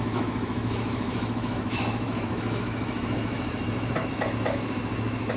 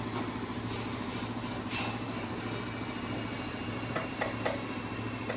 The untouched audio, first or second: second